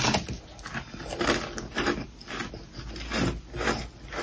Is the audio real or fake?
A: real